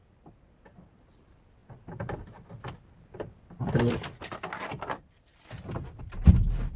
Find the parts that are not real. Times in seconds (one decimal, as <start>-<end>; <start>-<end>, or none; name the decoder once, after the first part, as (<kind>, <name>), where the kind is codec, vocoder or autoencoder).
none